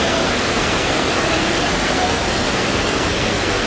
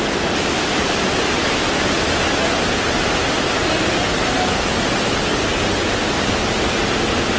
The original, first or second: second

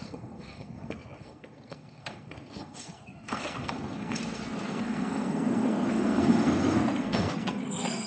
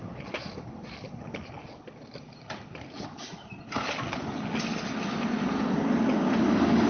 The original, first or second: second